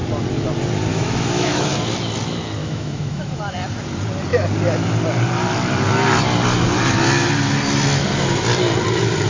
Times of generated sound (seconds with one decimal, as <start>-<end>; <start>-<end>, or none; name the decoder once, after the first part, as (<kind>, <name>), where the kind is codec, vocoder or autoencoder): 0.9-1.7 (autoencoder, DAC-VAE); 2.6-3.4